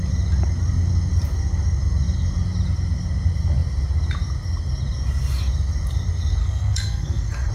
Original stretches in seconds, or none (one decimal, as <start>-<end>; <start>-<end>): 0.0-6.4